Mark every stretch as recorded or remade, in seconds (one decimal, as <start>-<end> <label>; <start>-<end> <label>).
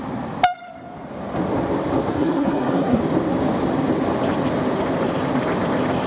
0.0-2.1 recorded; 2.1-3.0 remade; 3.0-6.1 recorded